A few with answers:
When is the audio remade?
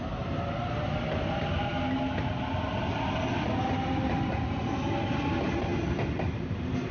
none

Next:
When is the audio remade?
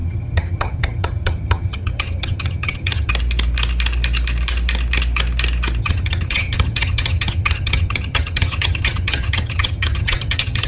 0.0-3.1 (vocoder, HiFi-GAN); 5.8-10.7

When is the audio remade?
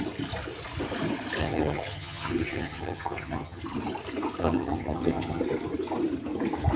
1.4-3.6 (vocoder, HiFi-GAN); 4.4-5.4